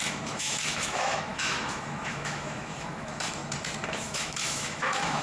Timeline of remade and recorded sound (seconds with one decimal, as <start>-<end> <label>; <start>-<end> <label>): 0.0-3.4 remade; 3.4-3.9 recorded; 3.9-5.2 remade